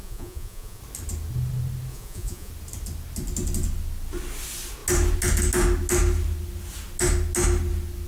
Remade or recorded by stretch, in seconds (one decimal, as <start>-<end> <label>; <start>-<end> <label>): 0.0-0.8 remade; 0.8-1.9 recorded; 1.9-2.5 remade; 2.5-8.1 recorded